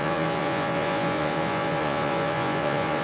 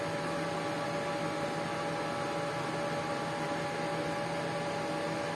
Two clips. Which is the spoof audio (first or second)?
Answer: first